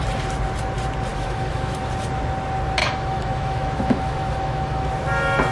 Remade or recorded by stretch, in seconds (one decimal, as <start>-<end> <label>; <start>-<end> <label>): 0.0-1.1 recorded; 1.1-1.8 remade; 1.8-2.8 recorded; 2.8-4.9 remade; 4.9-5.5 recorded